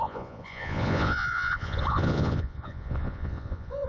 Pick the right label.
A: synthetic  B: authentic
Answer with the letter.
A